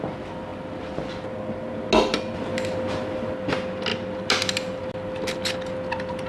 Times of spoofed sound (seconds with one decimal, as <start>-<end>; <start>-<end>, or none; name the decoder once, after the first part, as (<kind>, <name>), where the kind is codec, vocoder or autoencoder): none